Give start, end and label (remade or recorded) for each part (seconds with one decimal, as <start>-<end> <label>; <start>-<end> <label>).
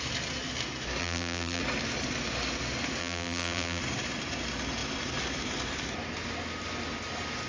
0.0-1.0 recorded; 1.0-1.6 remade; 1.6-3.0 recorded; 3.0-3.8 remade; 3.8-7.5 recorded